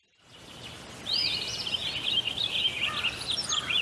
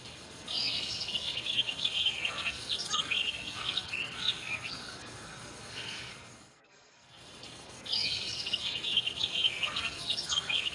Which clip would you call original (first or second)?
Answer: first